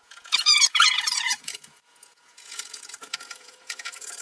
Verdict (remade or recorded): remade